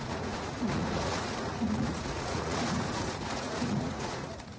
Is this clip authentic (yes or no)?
no